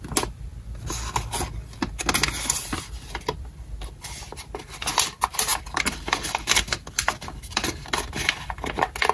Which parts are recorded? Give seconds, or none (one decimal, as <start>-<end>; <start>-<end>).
0.0-9.1